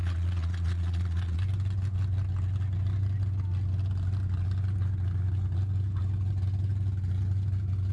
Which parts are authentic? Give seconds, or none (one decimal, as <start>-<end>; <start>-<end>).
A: 1.4-7.9